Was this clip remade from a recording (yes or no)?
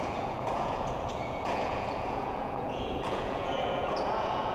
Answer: yes